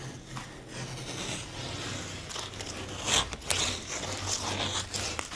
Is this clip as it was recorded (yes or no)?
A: yes